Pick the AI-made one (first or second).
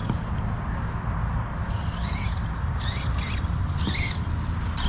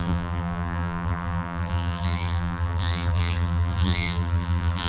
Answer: second